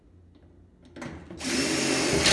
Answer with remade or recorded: recorded